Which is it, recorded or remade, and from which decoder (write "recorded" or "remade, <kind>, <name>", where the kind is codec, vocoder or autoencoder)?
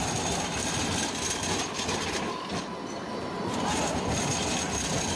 recorded